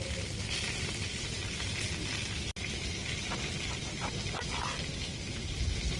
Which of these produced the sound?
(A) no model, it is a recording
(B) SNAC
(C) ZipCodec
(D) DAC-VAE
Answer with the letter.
A